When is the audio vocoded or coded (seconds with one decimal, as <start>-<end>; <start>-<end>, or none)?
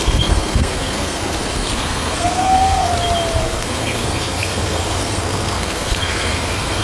0.0-2.9; 3.4-6.8